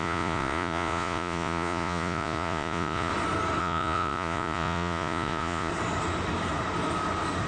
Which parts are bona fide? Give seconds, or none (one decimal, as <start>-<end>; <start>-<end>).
3.1-3.6; 5.7-7.5